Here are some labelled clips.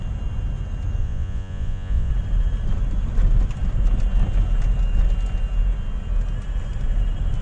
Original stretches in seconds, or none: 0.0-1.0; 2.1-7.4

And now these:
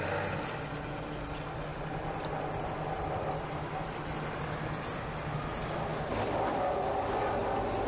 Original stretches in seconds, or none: 0.0-7.9

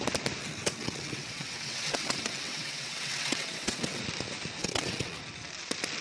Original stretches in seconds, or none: 0.0-0.4; 4.0-4.6; 5.2-6.0

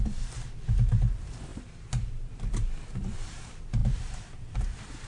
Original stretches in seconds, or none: none

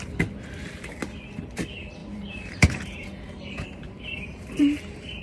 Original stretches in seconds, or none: 0.0-2.0